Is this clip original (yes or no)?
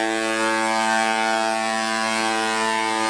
yes